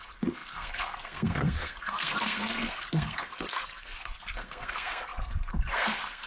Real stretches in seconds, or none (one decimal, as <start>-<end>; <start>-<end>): none